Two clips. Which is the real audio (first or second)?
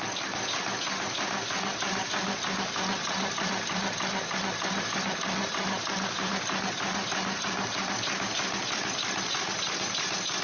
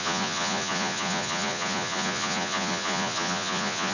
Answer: first